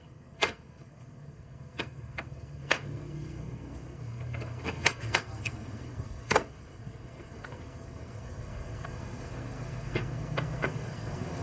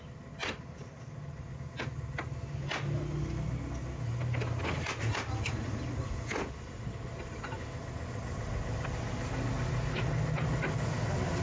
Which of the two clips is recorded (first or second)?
second